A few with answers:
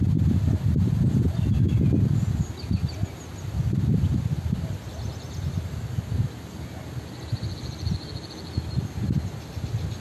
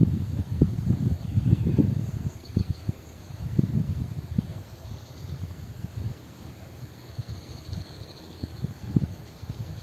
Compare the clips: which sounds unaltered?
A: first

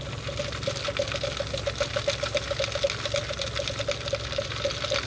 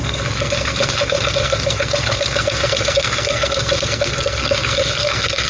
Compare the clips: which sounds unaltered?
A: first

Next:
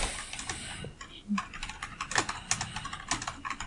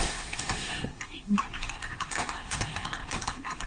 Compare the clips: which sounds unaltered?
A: first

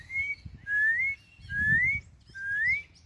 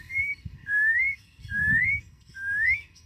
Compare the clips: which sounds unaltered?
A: first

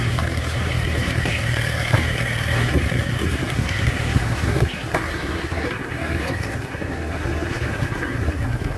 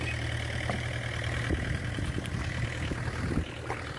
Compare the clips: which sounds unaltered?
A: second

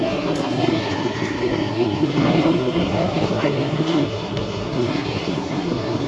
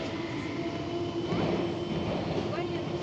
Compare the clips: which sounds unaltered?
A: second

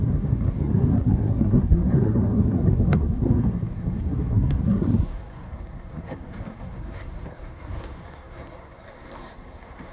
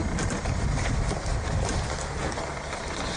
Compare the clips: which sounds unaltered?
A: second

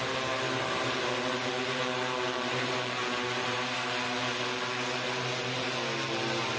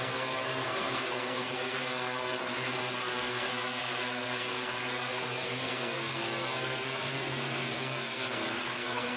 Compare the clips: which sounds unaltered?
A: first